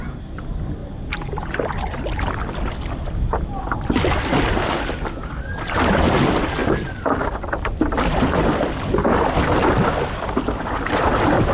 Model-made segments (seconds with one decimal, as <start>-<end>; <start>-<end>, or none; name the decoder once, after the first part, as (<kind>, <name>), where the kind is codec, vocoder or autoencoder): none